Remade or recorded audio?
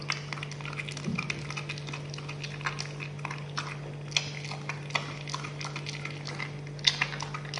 recorded